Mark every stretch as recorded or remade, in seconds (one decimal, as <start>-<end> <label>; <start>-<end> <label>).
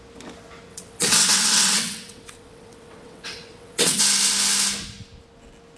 0.0-0.7 recorded; 0.7-4.0 remade; 4.0-5.8 recorded